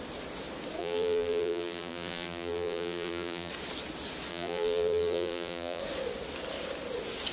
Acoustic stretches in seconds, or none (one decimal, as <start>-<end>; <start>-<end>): 0.0-0.8; 3.5-4.3; 5.8-7.3